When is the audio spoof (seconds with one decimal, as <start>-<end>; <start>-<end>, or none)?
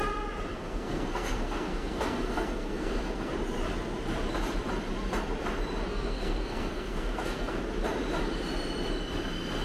0.5-3.3; 5.9-7.6